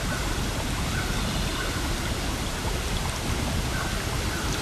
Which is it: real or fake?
real